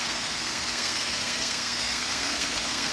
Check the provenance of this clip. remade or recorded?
remade